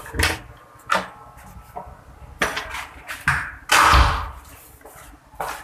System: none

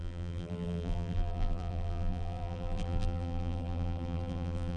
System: vocoder, BigVGAN v2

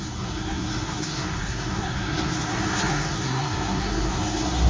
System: codec, SNAC